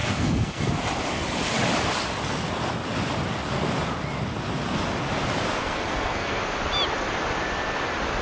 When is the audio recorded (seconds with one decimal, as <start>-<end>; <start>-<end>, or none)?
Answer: 0.7-5.6; 6.4-8.2

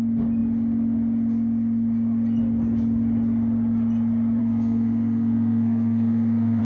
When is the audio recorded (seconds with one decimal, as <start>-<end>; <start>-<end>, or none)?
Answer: 0.0-4.4

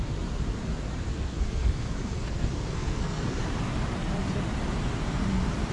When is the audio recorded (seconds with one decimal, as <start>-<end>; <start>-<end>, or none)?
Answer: 0.0-1.1; 3.4-5.7

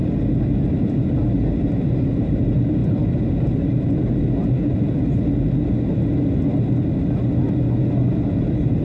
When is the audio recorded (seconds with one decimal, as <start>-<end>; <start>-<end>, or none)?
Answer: 0.0-8.8

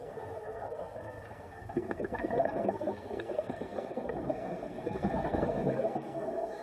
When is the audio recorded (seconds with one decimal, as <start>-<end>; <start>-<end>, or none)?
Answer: none

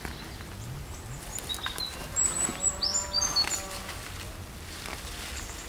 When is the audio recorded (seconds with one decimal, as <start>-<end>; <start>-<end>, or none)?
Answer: 0.0-5.7

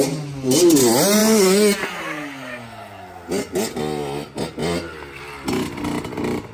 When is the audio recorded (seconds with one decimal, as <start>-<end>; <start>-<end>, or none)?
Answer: 0.0-6.5